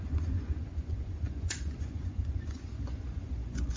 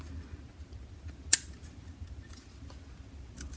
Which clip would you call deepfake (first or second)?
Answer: first